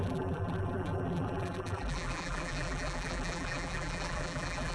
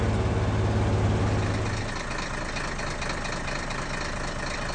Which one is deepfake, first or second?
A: first